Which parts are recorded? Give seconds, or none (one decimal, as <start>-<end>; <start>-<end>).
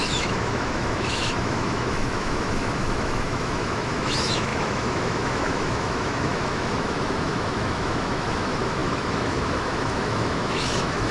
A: none